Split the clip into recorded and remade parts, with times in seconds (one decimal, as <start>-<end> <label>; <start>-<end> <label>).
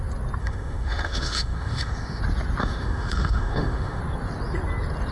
0.0-0.4 recorded; 0.4-2.2 remade; 2.2-2.6 recorded; 2.6-4.0 remade; 4.0-5.1 recorded